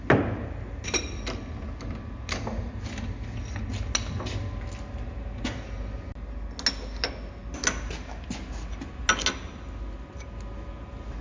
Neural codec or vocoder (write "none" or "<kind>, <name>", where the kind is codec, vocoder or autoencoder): none